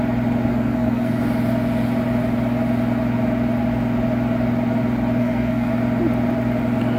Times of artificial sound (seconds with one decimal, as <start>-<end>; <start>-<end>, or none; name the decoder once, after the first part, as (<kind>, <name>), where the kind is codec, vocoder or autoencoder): 0.5-1.2 (codec, SNAC); 5.2-5.7